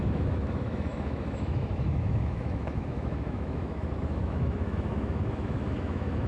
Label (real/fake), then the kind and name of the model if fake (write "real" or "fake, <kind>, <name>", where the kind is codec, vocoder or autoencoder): fake, autoencoder, DAC-VAE